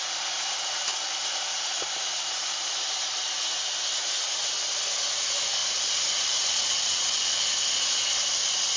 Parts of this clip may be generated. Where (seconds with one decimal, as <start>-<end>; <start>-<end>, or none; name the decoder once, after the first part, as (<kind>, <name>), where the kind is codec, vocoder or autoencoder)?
none